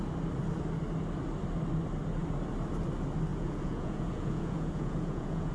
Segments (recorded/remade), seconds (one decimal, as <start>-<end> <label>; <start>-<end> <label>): 0.0-3.3 recorded; 3.3-5.5 remade